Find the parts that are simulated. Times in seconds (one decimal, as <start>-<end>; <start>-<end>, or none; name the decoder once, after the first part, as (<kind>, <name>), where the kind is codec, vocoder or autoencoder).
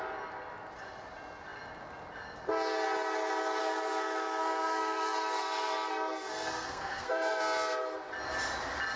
3.6-7.4 (codec, SNAC)